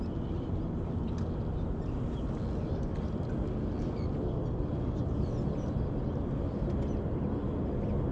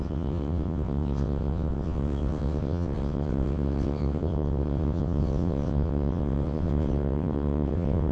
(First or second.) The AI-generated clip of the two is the second